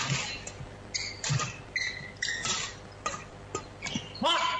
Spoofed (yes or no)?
no